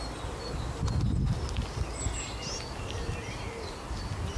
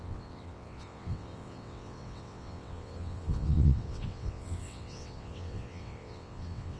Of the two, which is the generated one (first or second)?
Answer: second